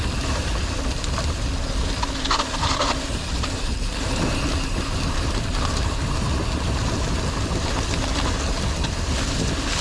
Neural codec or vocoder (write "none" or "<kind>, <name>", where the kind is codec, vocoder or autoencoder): none